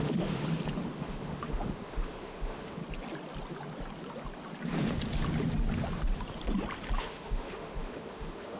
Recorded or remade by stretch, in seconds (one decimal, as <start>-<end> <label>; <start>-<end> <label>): 0.0-0.4 remade; 0.4-1.0 recorded; 1.0-2.8 remade; 2.8-7.0 recorded; 7.0-8.6 remade